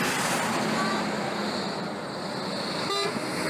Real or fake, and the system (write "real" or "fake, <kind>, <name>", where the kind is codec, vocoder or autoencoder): real